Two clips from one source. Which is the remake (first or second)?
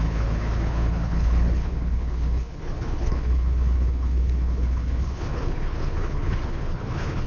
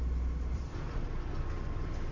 first